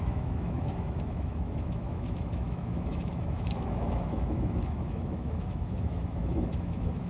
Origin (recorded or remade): remade